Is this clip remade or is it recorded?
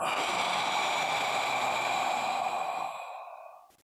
recorded